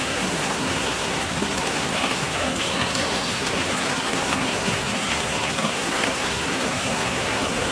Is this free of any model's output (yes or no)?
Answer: no